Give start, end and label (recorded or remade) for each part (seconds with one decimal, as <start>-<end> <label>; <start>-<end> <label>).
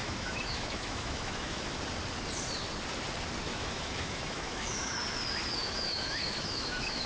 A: 0.0-1.8 remade; 1.8-3.5 recorded; 3.5-5.0 remade; 5.0-5.6 recorded; 5.6-7.1 remade